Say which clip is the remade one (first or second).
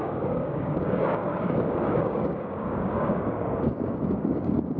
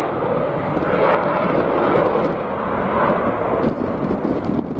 first